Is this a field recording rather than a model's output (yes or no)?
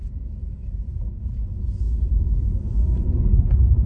yes